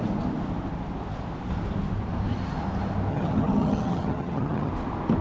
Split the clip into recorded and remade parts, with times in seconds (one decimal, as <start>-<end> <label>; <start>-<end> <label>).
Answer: 0.0-3.1 recorded; 3.1-4.7 remade; 4.7-5.2 recorded